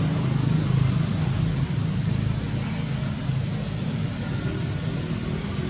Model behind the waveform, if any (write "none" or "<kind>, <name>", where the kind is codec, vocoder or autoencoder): none